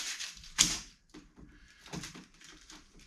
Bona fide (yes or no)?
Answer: no